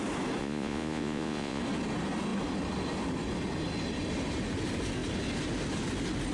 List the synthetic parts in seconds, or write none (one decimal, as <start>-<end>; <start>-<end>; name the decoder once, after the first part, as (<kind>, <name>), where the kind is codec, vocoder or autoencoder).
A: 0.4-1.6 (vocoder, Vocos)